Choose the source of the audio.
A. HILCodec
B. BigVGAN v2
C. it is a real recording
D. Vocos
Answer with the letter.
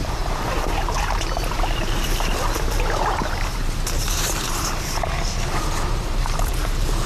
B